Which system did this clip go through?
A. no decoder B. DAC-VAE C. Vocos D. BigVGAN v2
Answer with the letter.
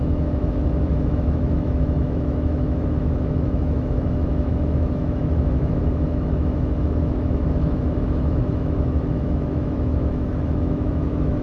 B